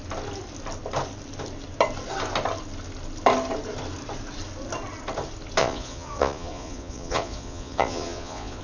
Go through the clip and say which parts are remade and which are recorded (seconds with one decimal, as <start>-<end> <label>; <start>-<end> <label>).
0.0-5.6 recorded; 5.6-8.6 remade